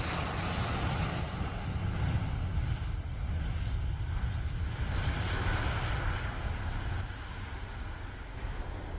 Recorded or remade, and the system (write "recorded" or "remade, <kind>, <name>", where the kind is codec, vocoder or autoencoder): recorded